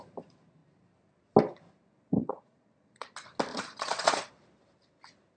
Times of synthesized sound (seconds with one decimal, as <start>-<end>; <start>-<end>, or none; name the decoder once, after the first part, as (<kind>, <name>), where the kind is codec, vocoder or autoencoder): 2.1-3.1 (vocoder, Vocos); 3.5-4.3